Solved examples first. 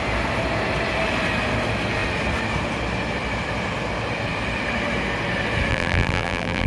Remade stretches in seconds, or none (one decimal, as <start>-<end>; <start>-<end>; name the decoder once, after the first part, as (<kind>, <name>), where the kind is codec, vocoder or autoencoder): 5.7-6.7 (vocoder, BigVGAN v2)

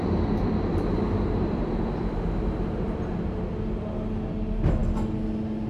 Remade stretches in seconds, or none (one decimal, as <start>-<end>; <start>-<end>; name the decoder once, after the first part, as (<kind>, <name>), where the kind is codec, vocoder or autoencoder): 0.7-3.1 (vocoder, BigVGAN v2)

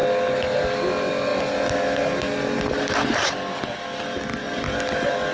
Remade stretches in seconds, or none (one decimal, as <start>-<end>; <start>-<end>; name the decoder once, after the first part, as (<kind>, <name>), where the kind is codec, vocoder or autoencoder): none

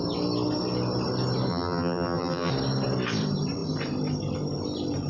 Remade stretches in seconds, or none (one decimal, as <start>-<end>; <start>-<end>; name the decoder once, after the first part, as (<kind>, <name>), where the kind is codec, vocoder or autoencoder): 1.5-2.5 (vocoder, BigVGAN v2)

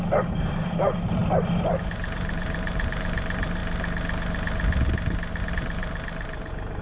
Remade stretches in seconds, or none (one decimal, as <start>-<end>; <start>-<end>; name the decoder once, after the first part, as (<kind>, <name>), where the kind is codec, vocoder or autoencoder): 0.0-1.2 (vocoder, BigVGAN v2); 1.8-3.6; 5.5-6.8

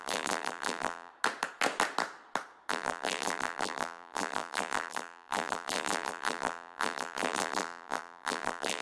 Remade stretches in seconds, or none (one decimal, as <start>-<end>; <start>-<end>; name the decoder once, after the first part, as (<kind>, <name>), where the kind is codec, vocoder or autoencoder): 0.0-1.1 (vocoder, BigVGAN v2); 2.7-8.8